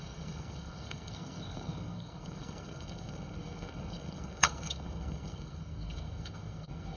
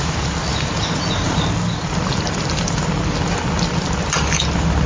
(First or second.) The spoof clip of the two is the first